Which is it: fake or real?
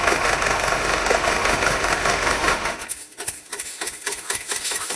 fake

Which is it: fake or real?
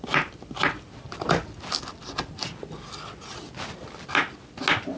real